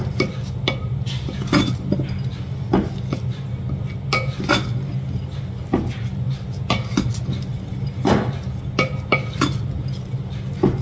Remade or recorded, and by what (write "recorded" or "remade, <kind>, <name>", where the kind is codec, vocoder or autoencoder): recorded